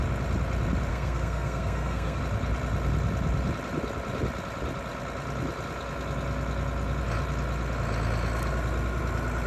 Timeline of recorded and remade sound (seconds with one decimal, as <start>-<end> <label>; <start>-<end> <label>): 0.0-0.9 recorded; 0.9-2.2 remade; 2.2-9.5 recorded